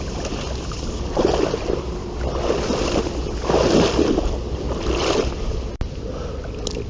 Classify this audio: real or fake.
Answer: real